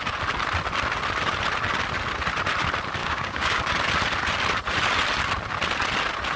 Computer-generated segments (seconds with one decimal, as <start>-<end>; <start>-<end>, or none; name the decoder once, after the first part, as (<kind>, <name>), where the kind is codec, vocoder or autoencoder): 3.0-3.6 (codec, DAC)